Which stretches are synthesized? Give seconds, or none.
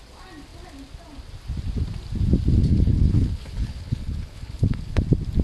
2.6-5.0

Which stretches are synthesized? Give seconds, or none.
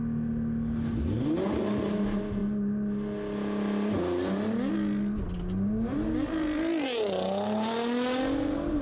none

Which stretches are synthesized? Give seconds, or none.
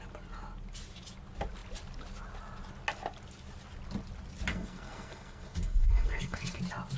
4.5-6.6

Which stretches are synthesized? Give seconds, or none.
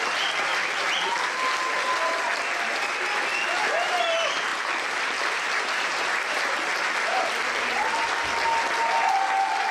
3.3-4.0; 4.5-7.2